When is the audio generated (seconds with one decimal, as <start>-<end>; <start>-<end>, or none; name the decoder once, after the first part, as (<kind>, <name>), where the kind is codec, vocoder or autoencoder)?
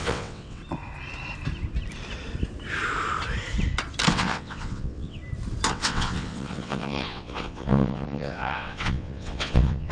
0.0-0.6 (vocoder, WaveNeXt); 4.1-5.2; 5.7-9.9